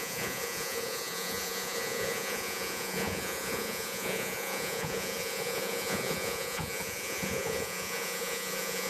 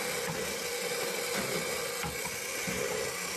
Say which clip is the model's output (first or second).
first